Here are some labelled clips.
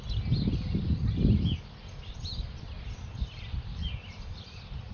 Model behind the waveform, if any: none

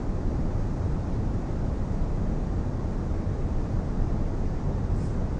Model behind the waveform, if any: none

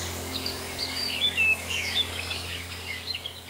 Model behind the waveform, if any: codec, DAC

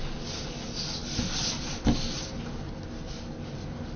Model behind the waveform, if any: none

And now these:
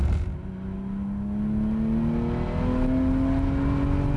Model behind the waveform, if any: none